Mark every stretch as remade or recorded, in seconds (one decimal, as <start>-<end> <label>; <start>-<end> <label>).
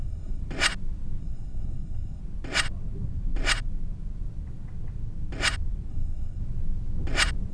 0.0-0.4 remade; 0.4-1.2 recorded; 1.2-2.2 remade; 2.2-5.9 recorded; 5.9-6.4 remade; 6.4-7.5 recorded